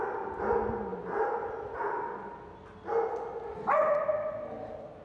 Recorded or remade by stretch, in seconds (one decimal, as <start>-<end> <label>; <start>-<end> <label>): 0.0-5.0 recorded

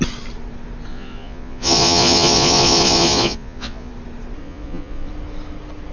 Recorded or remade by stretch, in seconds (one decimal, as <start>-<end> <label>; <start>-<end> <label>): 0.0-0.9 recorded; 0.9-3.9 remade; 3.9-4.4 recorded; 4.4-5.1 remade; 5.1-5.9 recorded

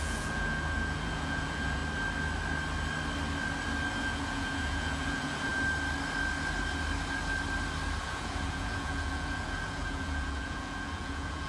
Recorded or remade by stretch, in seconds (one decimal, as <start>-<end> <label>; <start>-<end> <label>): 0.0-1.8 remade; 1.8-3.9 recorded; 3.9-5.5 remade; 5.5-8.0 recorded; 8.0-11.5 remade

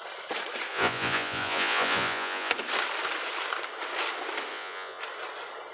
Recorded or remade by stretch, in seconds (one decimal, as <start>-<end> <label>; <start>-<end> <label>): 0.0-0.7 recorded; 0.7-2.5 remade; 2.5-4.5 recorded; 4.5-5.0 remade; 5.0-5.7 recorded

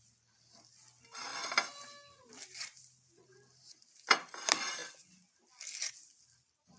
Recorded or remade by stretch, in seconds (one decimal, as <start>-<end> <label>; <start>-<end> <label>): 0.0-6.8 recorded

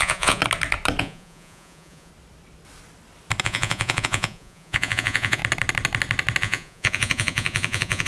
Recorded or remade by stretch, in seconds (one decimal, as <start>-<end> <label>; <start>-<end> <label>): 0.0-0.4 remade; 0.4-1.0 recorded; 1.0-2.1 remade; 2.1-3.4 recorded; 3.4-5.4 remade; 5.4-6.4 recorded; 6.4-8.1 remade